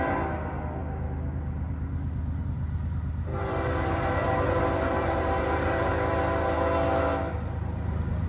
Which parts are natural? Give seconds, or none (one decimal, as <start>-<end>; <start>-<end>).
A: 0.0-3.3; 5.9-8.3